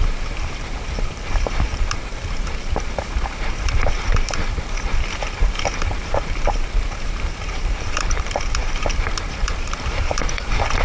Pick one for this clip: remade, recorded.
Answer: remade